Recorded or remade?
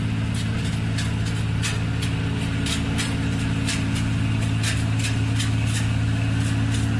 recorded